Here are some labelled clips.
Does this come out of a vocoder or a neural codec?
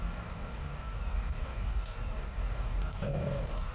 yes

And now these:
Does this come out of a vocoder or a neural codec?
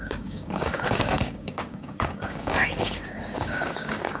yes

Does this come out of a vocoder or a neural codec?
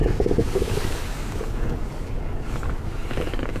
yes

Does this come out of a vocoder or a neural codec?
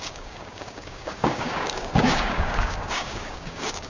yes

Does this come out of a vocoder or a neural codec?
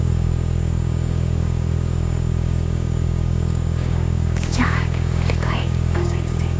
yes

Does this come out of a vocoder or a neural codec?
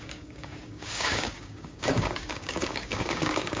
yes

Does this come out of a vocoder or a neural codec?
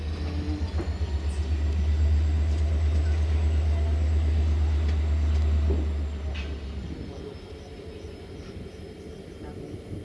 no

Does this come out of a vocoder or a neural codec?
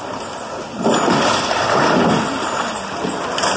no